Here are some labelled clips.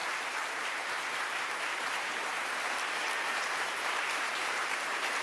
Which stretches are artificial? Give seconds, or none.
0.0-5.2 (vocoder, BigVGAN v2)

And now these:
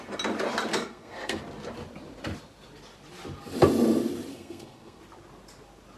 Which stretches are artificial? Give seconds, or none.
0.7-1.4 (codec, SNAC); 4.3-5.0

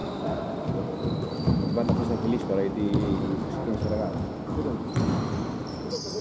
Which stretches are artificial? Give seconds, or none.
0.0-0.7 (vocoder, BigVGAN v2)

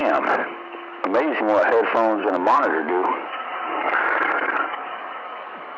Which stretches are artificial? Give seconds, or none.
2.2-5.8 (codec, DAC)